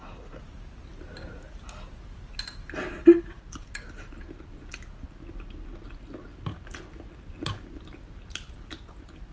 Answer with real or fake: real